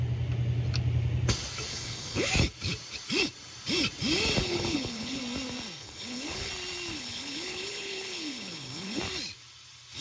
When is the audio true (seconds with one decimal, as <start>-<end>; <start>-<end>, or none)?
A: 0.0-1.7; 2.3-4.4; 5.2-5.8; 6.5-6.9; 9.0-10.0